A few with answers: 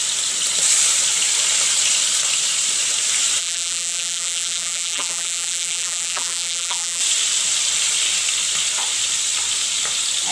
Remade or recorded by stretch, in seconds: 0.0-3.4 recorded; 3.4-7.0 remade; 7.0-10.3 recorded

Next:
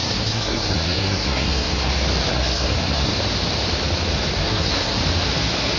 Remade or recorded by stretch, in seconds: 0.0-1.9 remade; 1.9-2.3 recorded; 2.3-3.1 remade; 3.1-4.4 recorded; 4.4-5.0 remade; 5.0-5.8 recorded

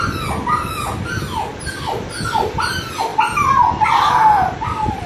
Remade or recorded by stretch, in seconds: 0.0-5.1 recorded

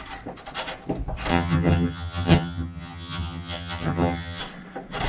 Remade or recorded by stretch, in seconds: 0.0-1.3 recorded; 1.3-4.4 remade; 4.4-5.1 recorded